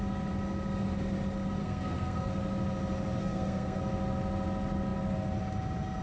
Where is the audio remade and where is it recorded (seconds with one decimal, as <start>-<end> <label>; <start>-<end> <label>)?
0.0-1.6 recorded; 1.6-2.3 remade; 2.3-3.2 recorded; 3.2-3.8 remade; 3.8-6.0 recorded